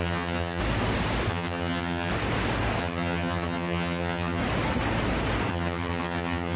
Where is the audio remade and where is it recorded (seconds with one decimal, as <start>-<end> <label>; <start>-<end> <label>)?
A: 0.0-0.6 remade; 0.6-1.3 recorded; 1.3-2.1 remade; 2.1-2.8 recorded; 2.8-4.4 remade; 4.4-5.5 recorded; 5.5-6.6 remade